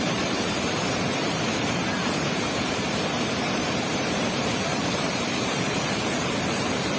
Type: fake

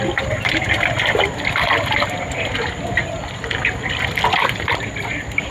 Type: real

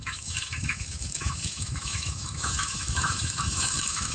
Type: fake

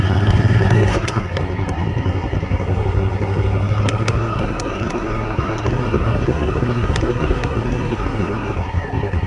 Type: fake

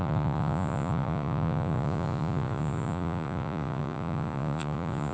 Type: fake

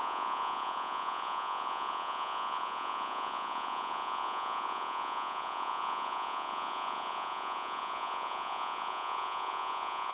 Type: fake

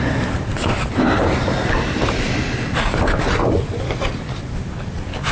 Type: real